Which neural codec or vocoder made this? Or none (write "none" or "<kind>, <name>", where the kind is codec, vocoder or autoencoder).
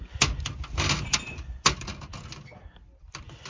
none